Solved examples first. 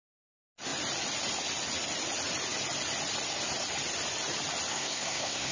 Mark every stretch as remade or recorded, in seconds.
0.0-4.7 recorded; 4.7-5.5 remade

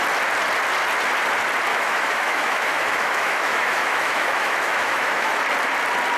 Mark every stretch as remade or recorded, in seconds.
0.0-1.7 recorded; 1.7-5.4 remade; 5.4-6.2 recorded

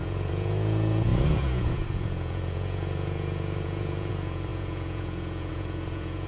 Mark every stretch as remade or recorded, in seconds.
0.0-6.3 remade

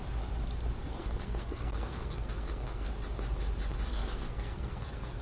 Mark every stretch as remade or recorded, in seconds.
0.0-0.8 recorded; 0.8-2.9 remade; 2.9-3.9 recorded; 3.9-5.2 remade

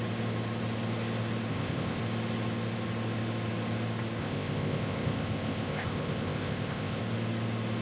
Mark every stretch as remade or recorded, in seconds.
0.0-1.5 recorded; 1.5-2.0 remade; 2.0-4.2 recorded; 4.2-7.0 remade; 7.0-7.8 recorded

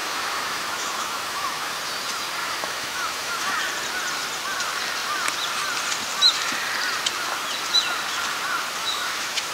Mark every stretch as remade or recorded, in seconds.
0.0-1.7 remade; 1.7-2.4 recorded; 2.4-3.6 remade; 3.6-8.8 recorded; 8.8-9.5 remade

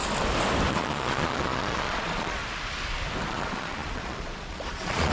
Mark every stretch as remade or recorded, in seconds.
0.0-0.7 recorded; 0.7-2.4 remade; 2.4-3.3 recorded; 3.3-5.1 remade

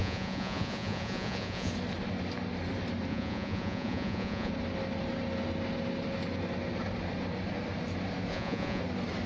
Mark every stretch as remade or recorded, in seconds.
0.0-1.7 remade; 1.7-3.1 recorded; 3.1-4.5 remade; 4.5-8.3 recorded; 8.3-8.8 remade; 8.8-9.3 recorded